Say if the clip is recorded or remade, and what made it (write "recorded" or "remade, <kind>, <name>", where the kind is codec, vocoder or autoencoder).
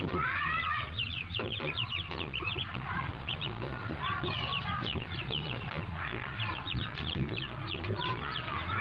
remade, vocoder, Vocos